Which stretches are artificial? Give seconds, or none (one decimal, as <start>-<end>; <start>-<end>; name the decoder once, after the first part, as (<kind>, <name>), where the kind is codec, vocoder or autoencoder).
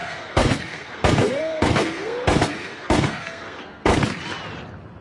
0.0-3.9 (codec, SNAC)